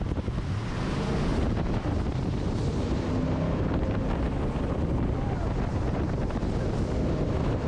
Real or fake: real